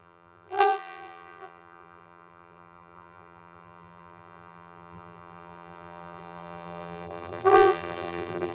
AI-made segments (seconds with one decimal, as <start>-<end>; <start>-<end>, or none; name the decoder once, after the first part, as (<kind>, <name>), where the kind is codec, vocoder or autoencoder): 0.0-8.5 (vocoder, BigVGAN v2)